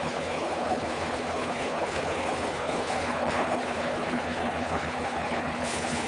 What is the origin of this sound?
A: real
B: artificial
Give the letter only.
B